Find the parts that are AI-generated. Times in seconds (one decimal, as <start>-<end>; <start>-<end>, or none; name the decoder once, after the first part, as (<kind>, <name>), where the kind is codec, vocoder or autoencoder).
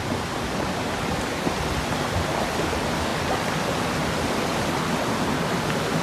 none